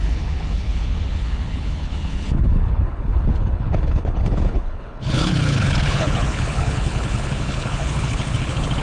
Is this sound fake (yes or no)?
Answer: yes